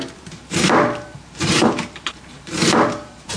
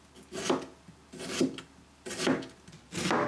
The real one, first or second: second